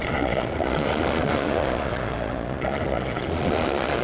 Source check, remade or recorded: remade